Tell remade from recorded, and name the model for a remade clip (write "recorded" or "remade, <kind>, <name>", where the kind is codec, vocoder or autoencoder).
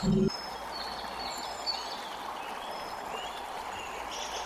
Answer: recorded